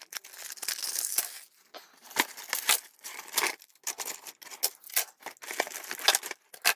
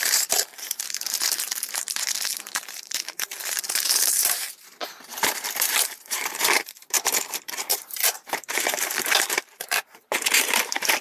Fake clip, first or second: second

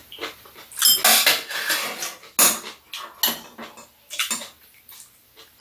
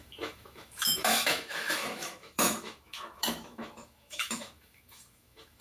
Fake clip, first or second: second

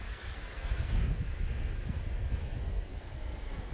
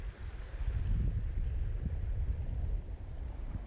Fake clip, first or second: first